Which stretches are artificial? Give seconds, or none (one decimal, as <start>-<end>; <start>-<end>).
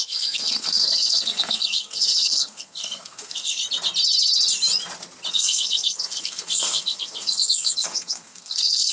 0.0-3.6; 5.3-8.9